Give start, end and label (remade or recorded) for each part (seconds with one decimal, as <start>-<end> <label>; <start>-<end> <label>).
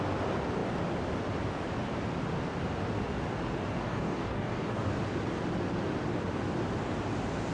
0.0-3.8 recorded; 3.8-4.9 remade; 4.9-7.5 recorded